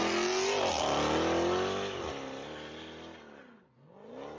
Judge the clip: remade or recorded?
recorded